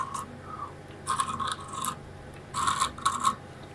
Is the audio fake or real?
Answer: real